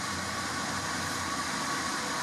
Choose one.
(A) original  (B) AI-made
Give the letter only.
B